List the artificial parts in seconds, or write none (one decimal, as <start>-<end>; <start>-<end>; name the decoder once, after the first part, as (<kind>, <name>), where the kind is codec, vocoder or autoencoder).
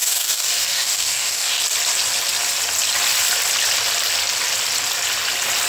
0.0-1.6 (codec, DAC)